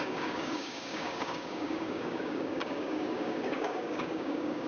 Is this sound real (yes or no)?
no